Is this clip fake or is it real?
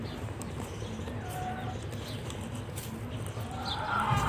real